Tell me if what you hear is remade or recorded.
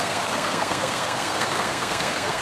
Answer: remade